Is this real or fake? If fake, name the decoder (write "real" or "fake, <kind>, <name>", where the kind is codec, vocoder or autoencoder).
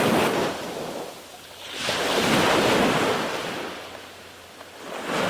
real